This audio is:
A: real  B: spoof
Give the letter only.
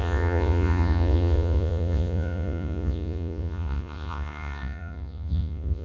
B